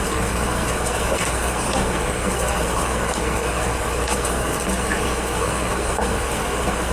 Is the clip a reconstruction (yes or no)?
yes